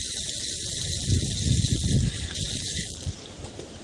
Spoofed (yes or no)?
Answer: no